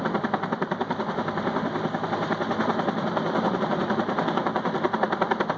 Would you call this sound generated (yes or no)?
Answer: no